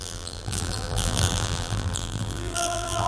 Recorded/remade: remade